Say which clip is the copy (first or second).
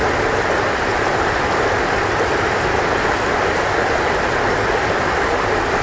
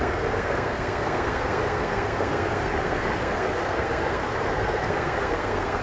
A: second